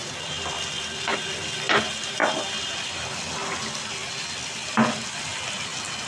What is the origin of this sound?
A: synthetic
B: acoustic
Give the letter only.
B